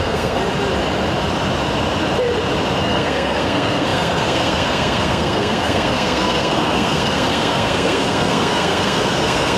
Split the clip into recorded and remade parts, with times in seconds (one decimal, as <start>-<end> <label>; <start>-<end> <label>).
0.0-0.4 remade; 0.4-2.8 recorded; 2.8-9.6 remade